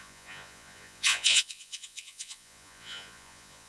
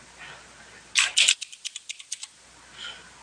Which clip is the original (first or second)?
second